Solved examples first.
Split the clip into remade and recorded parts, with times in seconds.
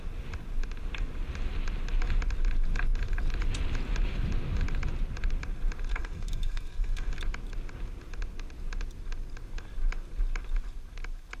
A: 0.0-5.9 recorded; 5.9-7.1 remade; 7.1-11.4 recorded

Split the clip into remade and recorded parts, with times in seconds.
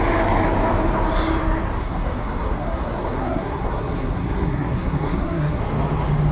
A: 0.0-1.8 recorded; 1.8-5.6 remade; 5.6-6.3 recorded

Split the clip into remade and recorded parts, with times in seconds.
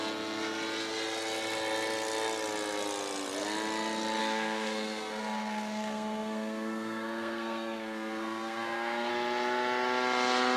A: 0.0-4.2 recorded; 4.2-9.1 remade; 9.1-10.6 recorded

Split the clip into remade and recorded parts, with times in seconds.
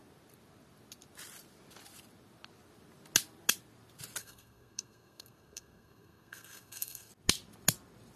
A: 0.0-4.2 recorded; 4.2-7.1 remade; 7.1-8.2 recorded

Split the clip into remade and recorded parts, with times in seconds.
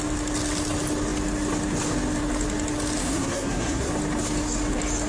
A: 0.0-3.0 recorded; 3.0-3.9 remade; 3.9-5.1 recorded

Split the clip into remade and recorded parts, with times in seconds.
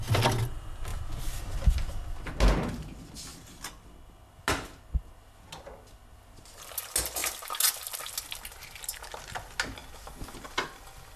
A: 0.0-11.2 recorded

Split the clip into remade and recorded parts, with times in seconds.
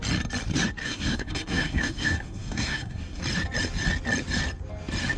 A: 0.0-0.8 recorded; 0.8-3.2 remade; 3.2-5.2 recorded